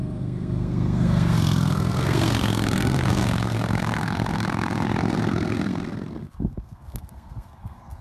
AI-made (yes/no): yes